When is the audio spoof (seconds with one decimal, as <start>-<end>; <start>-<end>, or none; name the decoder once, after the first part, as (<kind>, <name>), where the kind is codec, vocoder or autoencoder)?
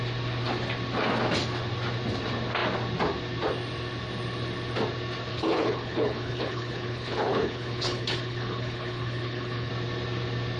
5.3-9.7 (codec, HILCodec)